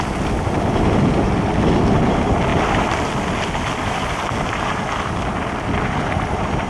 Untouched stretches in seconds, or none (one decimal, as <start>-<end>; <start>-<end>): 0.0-6.7